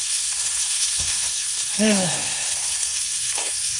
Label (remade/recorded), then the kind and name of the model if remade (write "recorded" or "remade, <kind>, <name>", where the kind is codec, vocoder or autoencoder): remade, codec, SNAC